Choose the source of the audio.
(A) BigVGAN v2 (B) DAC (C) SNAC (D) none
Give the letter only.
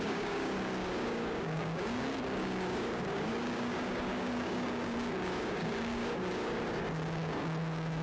B